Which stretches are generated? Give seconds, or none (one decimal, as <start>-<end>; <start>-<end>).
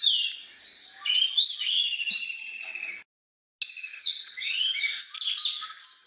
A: 3.9-4.8